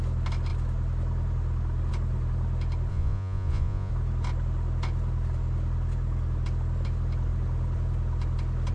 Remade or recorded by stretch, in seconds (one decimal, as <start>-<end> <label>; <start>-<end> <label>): 0.0-2.9 recorded; 2.9-3.9 remade; 3.9-8.7 recorded